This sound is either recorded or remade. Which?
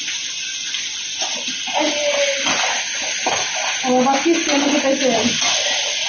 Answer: recorded